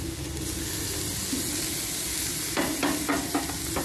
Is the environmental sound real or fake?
real